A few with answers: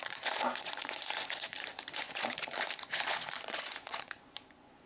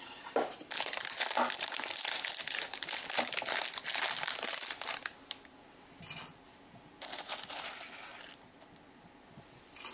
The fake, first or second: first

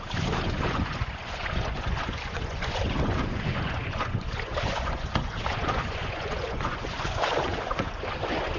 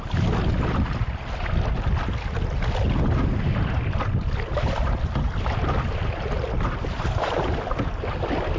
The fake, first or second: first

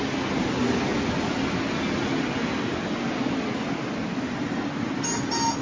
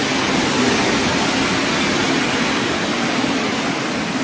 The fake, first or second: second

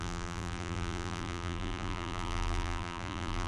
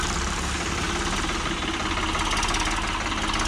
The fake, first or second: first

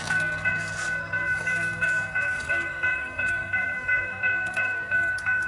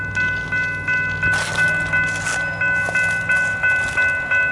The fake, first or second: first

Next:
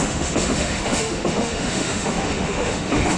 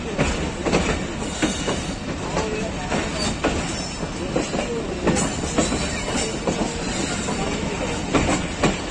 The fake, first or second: first